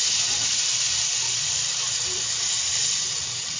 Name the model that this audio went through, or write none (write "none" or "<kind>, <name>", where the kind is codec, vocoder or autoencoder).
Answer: none